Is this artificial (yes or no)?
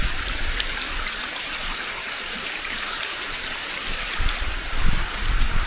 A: yes